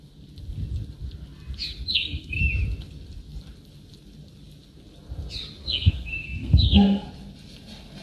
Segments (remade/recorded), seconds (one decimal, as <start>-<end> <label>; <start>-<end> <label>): 0.0-1.9 recorded; 1.9-2.4 remade; 2.4-5.6 recorded; 5.6-7.1 remade; 7.1-8.0 recorded